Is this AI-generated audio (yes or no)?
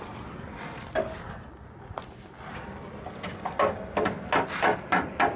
no